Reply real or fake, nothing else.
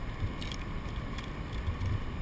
real